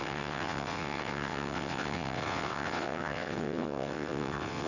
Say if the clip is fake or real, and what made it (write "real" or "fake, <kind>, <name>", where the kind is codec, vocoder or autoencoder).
fake, vocoder, WaveNeXt